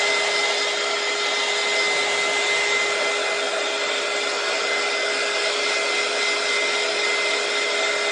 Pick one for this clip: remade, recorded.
recorded